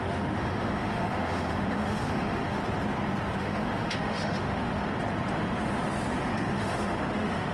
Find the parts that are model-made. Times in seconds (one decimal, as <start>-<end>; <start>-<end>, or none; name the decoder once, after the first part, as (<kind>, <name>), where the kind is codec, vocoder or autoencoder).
0.0-2.6 (autoencoder, DAC-VAE); 3.4-4.7; 6.2-7.5